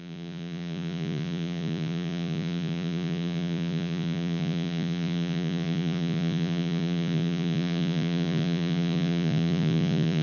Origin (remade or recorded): remade